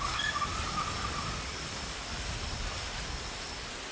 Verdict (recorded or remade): recorded